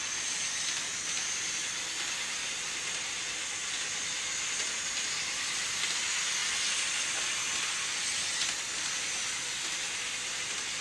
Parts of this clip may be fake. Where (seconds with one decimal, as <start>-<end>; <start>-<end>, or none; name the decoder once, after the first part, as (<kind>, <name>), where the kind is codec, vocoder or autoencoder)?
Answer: none